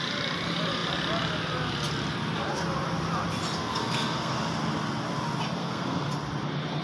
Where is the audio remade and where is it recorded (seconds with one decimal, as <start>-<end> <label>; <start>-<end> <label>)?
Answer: 0.0-3.7 recorded; 3.7-4.3 remade; 4.3-5.6 recorded; 5.6-6.1 remade; 6.1-6.8 recorded